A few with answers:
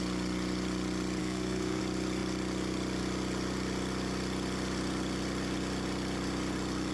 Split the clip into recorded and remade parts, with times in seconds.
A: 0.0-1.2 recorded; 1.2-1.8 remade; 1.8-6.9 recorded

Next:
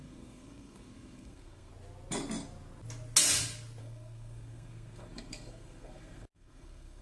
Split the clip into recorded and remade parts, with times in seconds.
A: 0.0-1.7 remade; 1.7-3.8 recorded; 3.8-7.0 remade

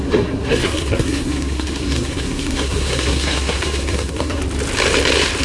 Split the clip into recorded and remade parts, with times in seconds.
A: 0.0-4.4 remade; 4.4-5.4 recorded

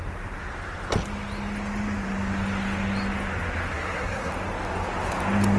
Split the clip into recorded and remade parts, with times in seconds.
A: 0.0-3.7 recorded; 3.7-4.3 remade; 4.3-5.6 recorded

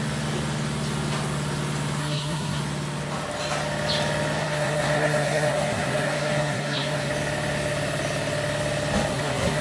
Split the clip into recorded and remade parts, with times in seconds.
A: 0.0-2.0 recorded; 2.0-2.6 remade; 2.6-4.4 recorded; 4.4-7.1 remade; 7.1-9.1 recorded; 9.1-9.6 remade